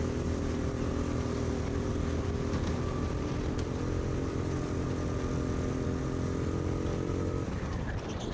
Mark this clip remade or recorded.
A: recorded